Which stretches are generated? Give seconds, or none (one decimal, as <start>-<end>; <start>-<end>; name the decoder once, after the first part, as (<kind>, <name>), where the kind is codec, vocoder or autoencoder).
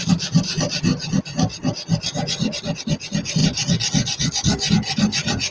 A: none